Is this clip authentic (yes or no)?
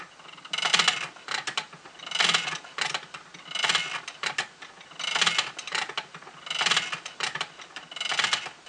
yes